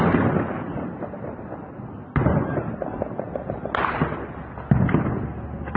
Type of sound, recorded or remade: recorded